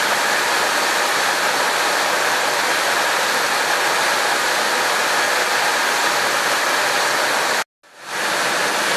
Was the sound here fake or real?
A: real